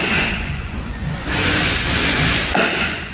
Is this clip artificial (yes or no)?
yes